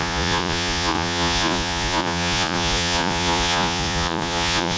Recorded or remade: remade